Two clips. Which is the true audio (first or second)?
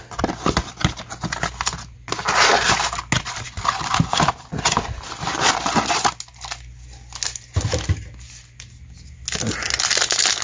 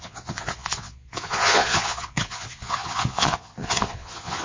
first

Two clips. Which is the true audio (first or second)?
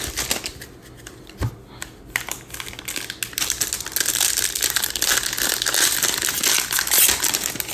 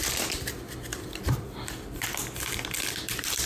first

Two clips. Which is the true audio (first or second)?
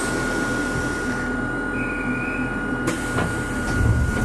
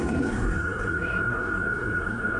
first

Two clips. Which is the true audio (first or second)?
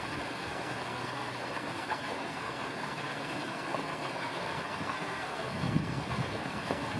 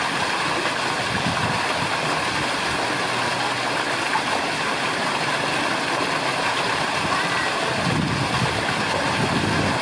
second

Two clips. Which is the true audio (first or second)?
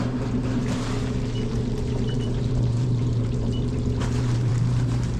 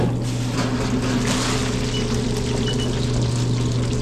second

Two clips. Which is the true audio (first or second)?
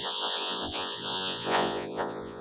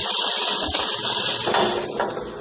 second